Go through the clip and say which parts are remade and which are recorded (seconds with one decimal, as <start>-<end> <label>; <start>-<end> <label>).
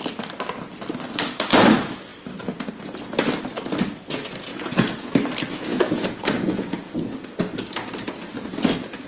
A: 0.0-4.5 recorded; 4.5-5.1 remade; 5.1-5.7 recorded; 5.7-7.4 remade; 7.4-9.1 recorded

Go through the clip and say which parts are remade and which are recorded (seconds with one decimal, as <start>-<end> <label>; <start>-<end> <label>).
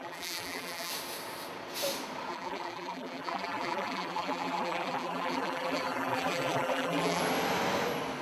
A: 0.0-0.9 remade; 0.9-2.3 recorded; 2.3-7.2 remade; 7.2-8.2 recorded